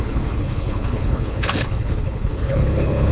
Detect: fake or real fake